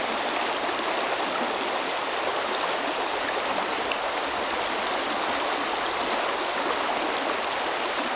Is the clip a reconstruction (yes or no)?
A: no